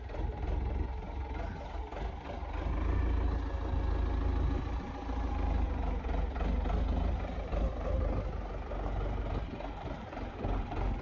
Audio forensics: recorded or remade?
recorded